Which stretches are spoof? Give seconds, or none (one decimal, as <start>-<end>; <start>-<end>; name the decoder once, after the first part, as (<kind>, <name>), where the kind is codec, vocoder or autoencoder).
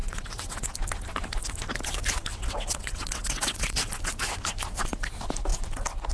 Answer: 0.0-0.6 (vocoder, WaveNeXt); 2.3-3.9